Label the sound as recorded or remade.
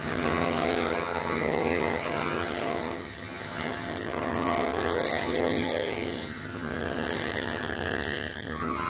remade